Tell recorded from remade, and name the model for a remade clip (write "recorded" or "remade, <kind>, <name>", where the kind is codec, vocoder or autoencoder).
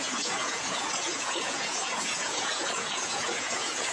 remade, vocoder, Vocos